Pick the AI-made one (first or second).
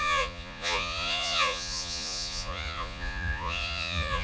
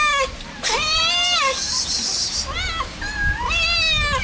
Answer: first